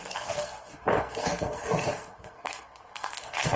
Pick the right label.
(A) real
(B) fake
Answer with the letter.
B